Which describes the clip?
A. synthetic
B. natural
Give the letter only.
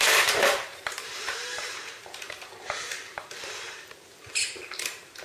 A